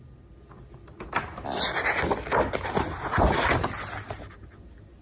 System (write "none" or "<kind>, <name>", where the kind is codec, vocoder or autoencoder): none